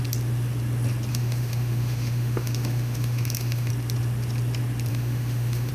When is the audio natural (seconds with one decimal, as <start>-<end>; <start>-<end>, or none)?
0.0-1.1; 3.7-4.9